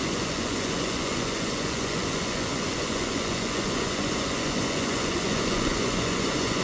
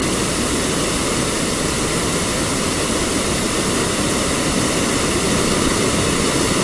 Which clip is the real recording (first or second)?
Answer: second